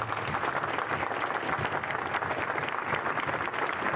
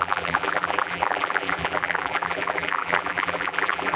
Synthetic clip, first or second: second